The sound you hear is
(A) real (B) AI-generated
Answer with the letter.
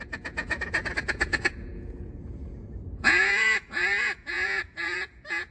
B